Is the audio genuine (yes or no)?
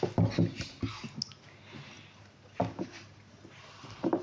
yes